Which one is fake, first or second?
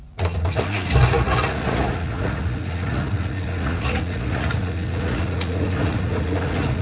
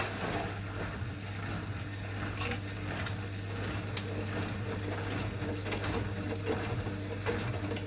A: first